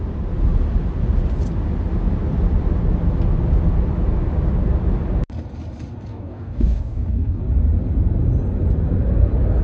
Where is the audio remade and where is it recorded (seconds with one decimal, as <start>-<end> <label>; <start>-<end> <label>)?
0.0-6.1 recorded; 6.1-7.4 remade; 7.4-9.6 recorded